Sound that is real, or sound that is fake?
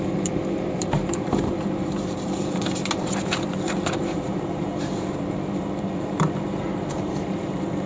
fake